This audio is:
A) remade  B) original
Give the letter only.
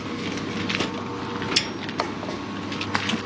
B